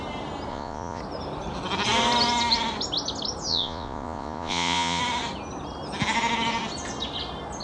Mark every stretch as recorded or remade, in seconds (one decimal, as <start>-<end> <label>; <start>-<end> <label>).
0.0-0.5 recorded; 0.5-1.0 remade; 1.0-3.5 recorded; 3.5-5.0 remade; 5.0-7.6 recorded